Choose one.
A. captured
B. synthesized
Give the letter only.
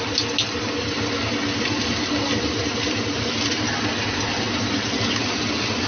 A